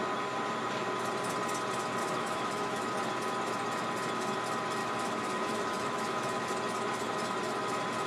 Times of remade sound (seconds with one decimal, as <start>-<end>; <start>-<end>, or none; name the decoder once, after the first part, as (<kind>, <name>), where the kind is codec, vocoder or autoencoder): 2.0-2.9 (autoencoder, DAC-VAE); 4.8-6.5